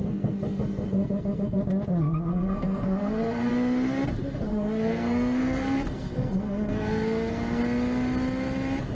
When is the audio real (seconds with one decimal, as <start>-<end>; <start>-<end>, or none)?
1.6-2.3; 3.5-4.5; 7.6-8.9